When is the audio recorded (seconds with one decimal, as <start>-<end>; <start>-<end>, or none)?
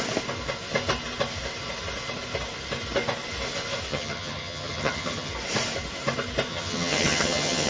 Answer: 0.0-3.9; 5.3-6.5